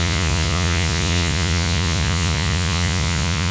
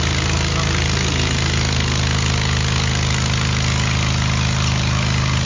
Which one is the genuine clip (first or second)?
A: second